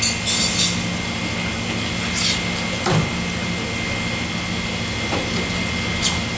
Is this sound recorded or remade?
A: recorded